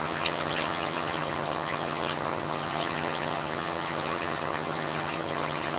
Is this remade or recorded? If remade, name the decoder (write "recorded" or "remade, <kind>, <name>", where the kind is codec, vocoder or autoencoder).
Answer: remade, vocoder, HiFi-GAN